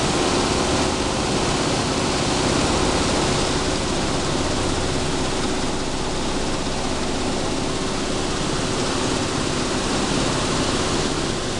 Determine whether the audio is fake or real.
real